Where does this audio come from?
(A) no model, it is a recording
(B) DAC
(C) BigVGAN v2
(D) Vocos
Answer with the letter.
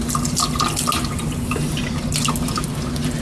A